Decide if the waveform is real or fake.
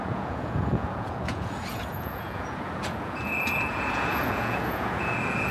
fake